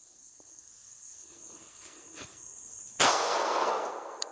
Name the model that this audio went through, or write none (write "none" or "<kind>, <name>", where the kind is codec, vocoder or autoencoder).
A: codec, SNAC